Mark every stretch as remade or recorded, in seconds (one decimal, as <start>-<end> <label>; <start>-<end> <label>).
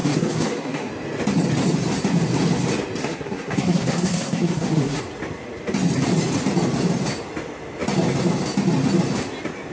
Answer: 0.0-0.9 remade; 0.9-3.0 recorded; 3.0-5.0 remade; 5.0-9.7 recorded